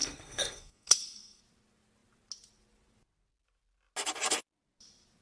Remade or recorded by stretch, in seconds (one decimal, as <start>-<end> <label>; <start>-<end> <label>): 0.0-1.4 remade; 1.4-5.2 recorded